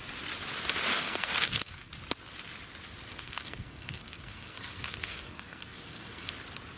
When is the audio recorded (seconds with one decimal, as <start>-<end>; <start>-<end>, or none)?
0.0-0.9; 1.9-3.1; 6.3-6.8